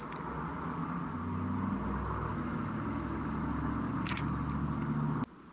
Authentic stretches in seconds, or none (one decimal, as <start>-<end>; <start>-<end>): 0.0-5.5